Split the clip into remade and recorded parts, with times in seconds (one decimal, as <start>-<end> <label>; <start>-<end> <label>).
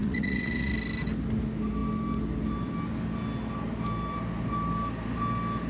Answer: 0.0-0.7 remade; 0.7-5.7 recorded